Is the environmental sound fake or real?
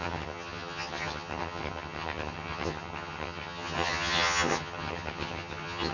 fake